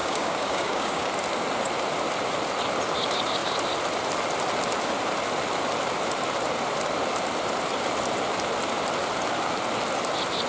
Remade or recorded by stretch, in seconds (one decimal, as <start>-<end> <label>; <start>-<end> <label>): 0.0-1.1 remade; 1.1-10.5 recorded